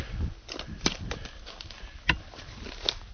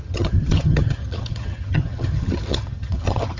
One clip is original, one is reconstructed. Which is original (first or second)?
first